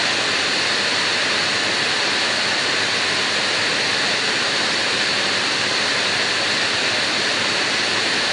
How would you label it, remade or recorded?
recorded